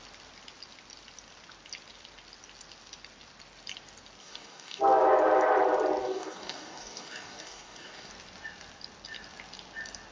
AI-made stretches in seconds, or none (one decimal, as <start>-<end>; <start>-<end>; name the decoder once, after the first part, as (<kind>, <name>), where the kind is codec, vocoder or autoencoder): 4.2-4.8 (codec, DAC); 6.0-8.1